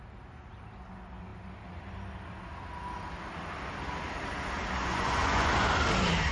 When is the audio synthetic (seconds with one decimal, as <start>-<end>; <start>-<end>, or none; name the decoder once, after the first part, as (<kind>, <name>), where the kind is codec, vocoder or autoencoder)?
4.8-5.5 (vocoder, Vocos)